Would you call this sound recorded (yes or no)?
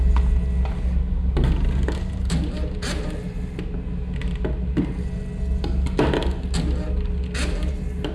yes